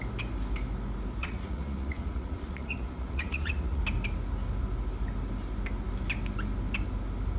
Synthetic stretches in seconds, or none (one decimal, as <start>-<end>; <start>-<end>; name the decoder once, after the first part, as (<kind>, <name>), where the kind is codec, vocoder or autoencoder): 1.2-3.8 (vocoder, Vocos)

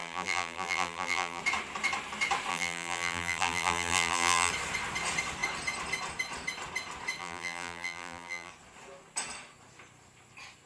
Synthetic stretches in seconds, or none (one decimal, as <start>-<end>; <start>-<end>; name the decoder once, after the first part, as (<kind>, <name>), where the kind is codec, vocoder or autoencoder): 0.0-1.4 (vocoder, BigVGAN v2); 2.5-4.5; 7.2-8.5

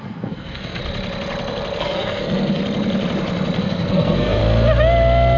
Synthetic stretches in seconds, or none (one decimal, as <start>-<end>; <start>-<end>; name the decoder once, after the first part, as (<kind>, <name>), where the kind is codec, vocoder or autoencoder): 0.0-0.8 (codec, SNAC); 1.8-2.6; 3.6-4.4

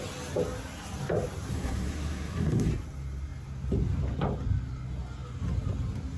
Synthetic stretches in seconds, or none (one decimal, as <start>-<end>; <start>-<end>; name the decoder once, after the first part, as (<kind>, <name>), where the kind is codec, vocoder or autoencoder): 1.5-2.7 (codec, SNAC)